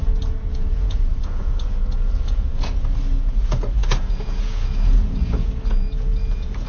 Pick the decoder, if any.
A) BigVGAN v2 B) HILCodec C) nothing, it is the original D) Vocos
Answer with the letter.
D